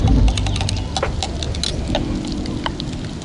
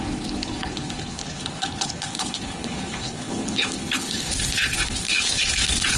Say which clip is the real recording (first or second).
first